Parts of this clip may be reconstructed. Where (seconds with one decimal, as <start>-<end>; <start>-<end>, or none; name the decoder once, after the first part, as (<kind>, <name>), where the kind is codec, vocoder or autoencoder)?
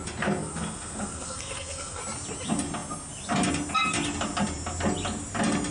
0.4-2.0 (codec, SNAC)